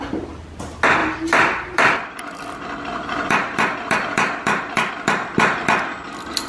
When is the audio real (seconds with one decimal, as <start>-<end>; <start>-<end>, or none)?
0.0-1.0; 4.9-6.5